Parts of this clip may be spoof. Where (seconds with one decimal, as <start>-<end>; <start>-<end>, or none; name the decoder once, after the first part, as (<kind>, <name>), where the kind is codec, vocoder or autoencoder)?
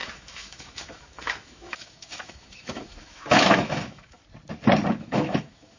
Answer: 0.0-4.2 (autoencoder, DAC-VAE); 5.0-5.8